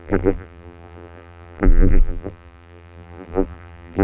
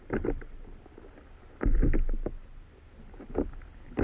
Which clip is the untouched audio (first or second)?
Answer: second